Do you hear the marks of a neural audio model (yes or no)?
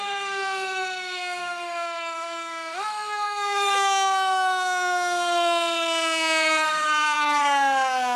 yes